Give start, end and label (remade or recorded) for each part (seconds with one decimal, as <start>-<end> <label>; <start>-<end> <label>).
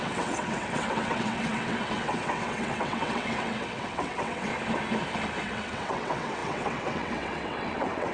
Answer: 0.0-4.5 remade; 4.5-5.4 recorded; 5.4-8.1 remade